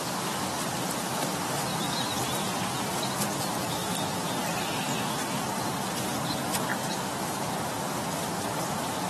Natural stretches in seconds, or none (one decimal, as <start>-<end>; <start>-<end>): 0.0-3.8; 4.3-4.9; 6.1-6.7; 8.6-9.1